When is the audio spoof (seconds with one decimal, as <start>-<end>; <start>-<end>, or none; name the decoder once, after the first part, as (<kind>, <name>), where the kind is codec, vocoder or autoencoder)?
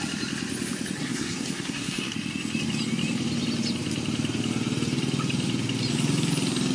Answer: 1.0-2.1 (codec, SNAC)